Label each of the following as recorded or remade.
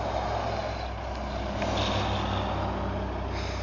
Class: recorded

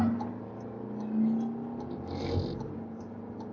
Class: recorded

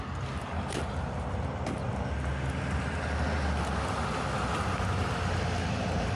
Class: recorded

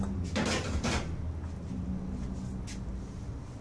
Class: recorded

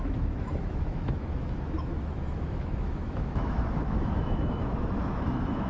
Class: remade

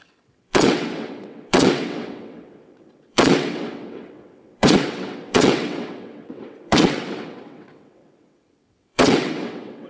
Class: remade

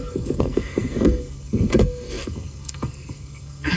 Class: remade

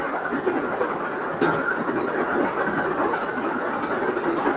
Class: recorded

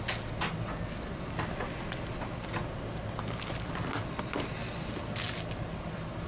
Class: recorded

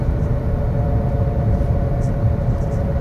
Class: recorded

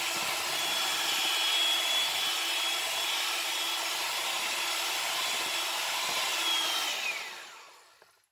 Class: recorded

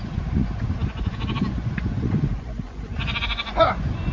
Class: remade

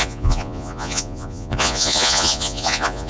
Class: remade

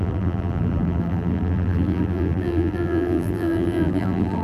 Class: remade